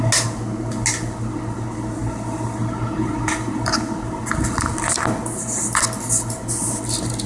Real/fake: real